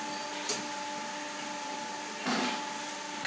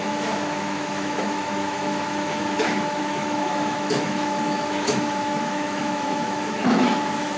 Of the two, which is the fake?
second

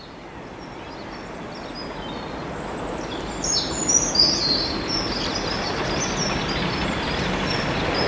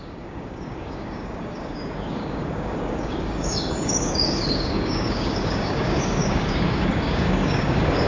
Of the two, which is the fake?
second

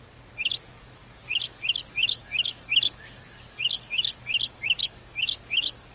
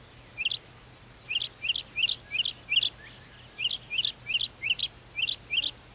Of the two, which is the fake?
first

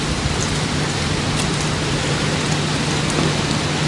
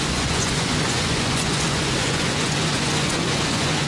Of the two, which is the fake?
second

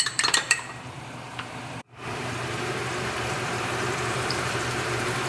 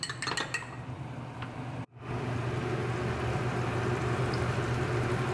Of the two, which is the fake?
first